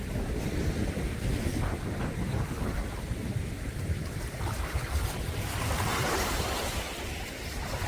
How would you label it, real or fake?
real